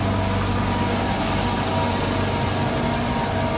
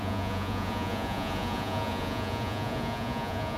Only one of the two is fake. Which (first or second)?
second